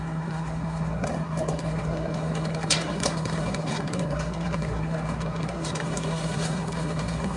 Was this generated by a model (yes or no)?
yes